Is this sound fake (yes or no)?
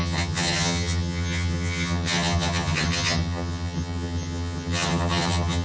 yes